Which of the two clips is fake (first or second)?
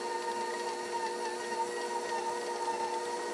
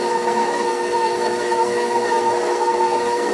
second